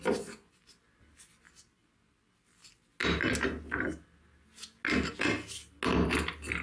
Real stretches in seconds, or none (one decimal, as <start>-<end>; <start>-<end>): 0.0-6.6